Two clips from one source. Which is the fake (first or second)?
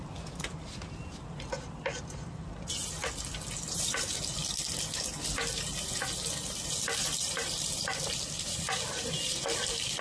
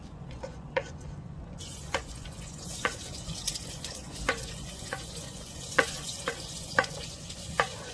second